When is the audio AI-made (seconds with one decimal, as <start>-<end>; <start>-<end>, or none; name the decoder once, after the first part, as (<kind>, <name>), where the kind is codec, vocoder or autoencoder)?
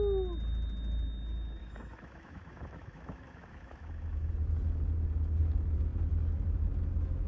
1.6-4.3 (autoencoder, DAC-VAE)